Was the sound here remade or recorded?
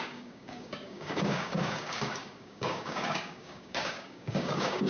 remade